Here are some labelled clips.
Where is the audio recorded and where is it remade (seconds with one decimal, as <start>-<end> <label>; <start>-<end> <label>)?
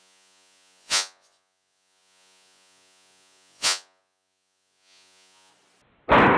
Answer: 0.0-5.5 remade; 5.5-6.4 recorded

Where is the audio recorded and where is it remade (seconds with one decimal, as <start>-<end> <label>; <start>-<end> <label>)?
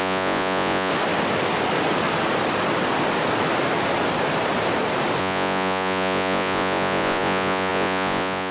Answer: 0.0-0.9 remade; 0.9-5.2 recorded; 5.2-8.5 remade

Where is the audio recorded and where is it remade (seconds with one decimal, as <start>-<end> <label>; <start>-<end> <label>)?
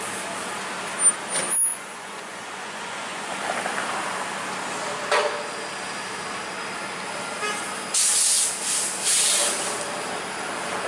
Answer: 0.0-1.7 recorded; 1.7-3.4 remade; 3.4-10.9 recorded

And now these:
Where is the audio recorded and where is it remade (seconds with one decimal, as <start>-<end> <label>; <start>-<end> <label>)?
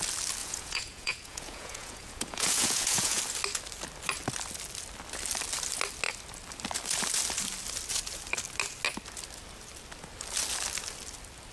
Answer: 0.0-0.4 recorded; 0.4-3.2 remade; 3.2-11.5 recorded